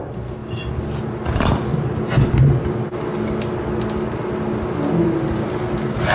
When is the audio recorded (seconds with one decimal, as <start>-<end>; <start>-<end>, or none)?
0.0-6.1